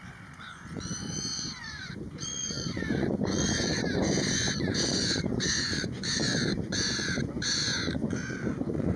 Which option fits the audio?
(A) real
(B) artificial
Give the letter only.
B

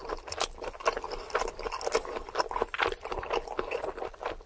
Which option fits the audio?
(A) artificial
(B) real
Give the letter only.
B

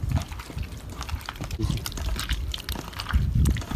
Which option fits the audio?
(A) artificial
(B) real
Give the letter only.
B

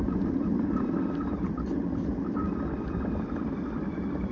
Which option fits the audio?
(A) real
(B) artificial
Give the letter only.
A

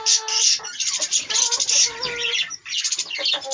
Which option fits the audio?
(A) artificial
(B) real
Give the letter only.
B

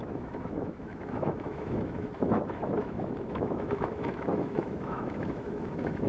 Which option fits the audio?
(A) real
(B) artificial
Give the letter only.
B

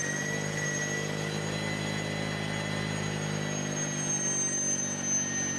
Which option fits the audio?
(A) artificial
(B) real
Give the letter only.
B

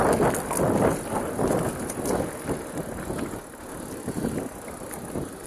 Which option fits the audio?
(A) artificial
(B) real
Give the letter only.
B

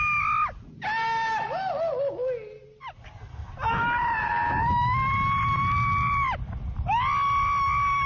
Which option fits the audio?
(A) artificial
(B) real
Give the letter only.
B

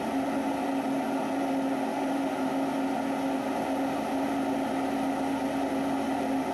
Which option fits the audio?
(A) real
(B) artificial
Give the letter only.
A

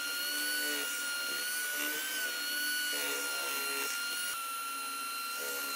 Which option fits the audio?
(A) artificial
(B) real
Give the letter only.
B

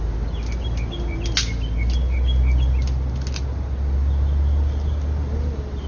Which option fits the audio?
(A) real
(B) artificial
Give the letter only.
A